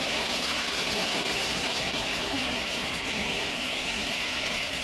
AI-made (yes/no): yes